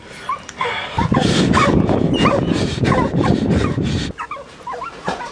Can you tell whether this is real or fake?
fake